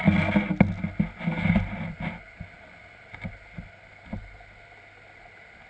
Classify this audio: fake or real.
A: real